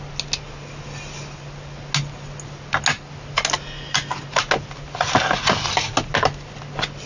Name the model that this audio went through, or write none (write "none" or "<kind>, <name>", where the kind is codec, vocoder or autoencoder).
none